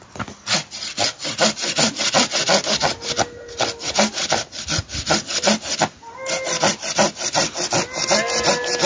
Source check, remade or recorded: recorded